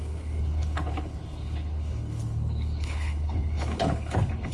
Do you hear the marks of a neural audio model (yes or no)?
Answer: yes